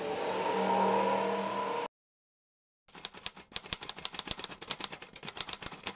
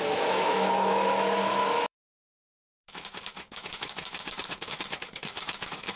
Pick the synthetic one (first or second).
second